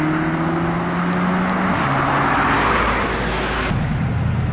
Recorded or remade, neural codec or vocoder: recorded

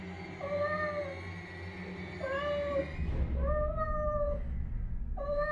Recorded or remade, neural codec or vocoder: recorded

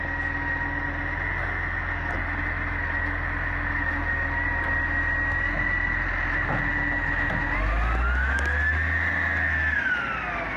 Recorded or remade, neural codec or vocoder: recorded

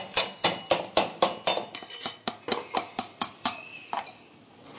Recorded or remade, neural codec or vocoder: recorded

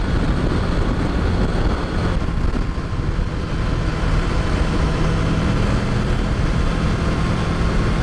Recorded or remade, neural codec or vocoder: recorded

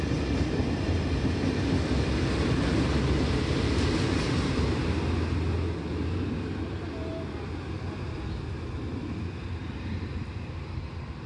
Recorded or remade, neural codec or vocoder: recorded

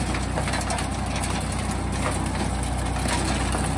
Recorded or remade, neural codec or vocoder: recorded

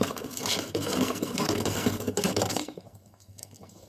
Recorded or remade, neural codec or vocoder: remade, codec, SNAC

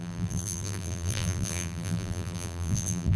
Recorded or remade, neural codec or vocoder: remade, vocoder, BigVGAN v2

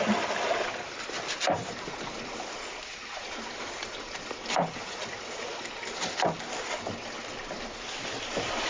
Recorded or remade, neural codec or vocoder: recorded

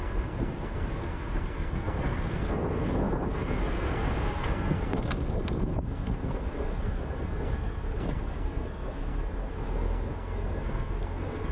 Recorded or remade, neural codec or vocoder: remade, codec, SNAC